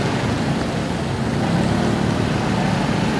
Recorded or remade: recorded